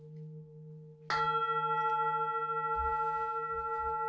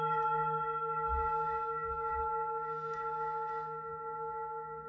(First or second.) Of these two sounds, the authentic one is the first